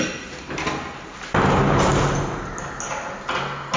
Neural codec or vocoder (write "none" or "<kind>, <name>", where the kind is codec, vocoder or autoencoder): none